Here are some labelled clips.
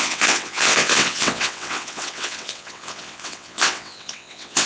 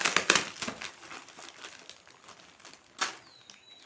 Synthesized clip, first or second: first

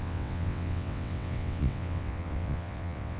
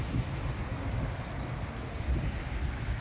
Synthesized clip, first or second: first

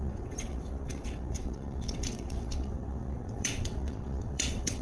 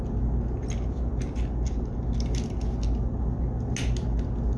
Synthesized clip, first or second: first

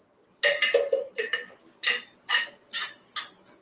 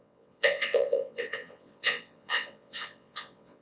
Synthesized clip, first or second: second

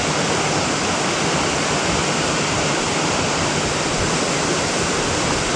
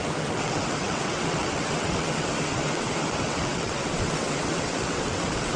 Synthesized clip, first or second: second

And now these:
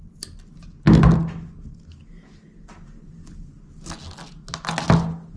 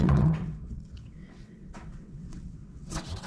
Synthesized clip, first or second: second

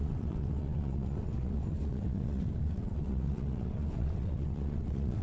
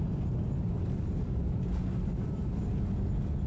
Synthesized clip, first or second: first